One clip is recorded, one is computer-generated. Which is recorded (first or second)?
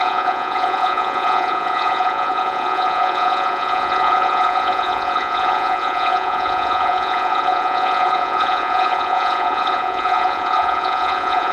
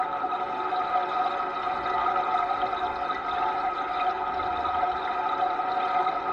second